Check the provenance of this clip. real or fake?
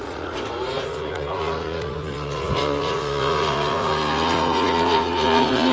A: fake